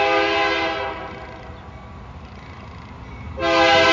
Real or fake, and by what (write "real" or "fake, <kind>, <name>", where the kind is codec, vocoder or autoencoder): real